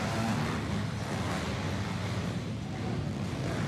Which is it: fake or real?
real